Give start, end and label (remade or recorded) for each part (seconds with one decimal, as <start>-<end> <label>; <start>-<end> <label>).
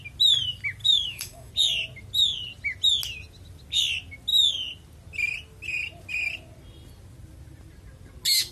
0.0-0.8 recorded; 0.8-1.5 remade; 1.5-8.5 recorded